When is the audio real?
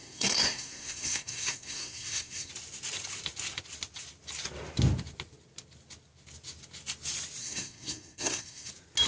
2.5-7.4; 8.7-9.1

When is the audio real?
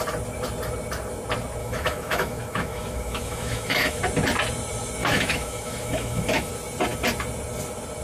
0.0-1.6; 4.0-5.0; 6.5-8.0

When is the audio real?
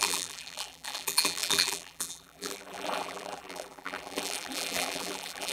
none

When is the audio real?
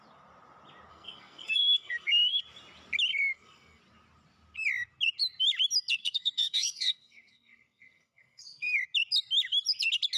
0.0-0.9; 2.4-3.1; 3.8-6.0; 8.8-10.2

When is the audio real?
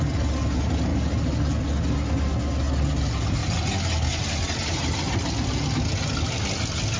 0.0-7.0